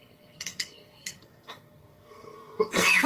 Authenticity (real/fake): fake